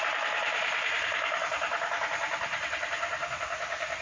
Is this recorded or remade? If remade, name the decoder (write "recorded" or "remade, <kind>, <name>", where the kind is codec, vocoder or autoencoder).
remade, vocoder, BigVGAN v2